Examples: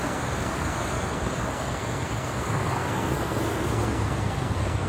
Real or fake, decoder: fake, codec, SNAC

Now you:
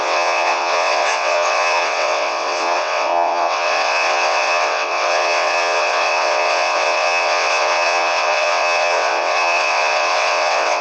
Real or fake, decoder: fake, vocoder, WaveNeXt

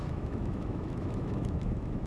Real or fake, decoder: fake, autoencoder, DAC-VAE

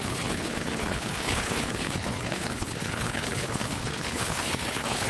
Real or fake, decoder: fake, codec, HILCodec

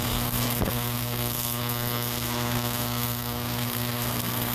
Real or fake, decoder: fake, codec, SNAC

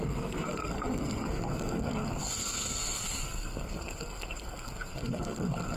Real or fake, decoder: fake, codec, SNAC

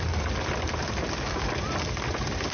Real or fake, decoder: real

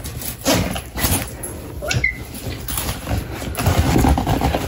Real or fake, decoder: real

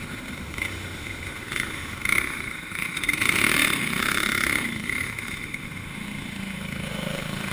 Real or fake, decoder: fake, autoencoder, DAC-VAE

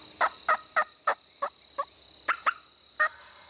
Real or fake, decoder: real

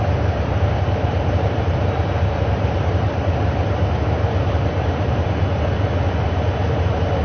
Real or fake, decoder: fake, vocoder, BigVGAN v2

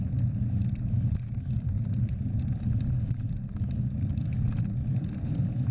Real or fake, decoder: fake, vocoder, BigVGAN v2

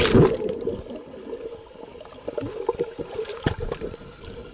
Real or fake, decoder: real